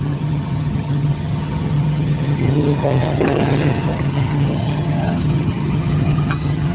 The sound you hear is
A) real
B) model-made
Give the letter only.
B